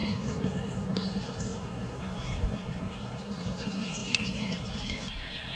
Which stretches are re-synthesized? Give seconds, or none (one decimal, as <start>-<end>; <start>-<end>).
0.0-5.6